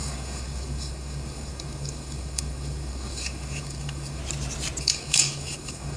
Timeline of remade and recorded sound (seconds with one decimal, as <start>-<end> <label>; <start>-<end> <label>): 0.0-4.2 remade; 4.2-4.8 recorded; 4.8-6.0 remade